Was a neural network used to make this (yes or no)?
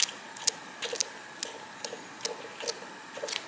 no